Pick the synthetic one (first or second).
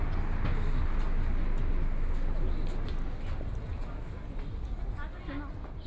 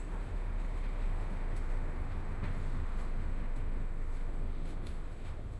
second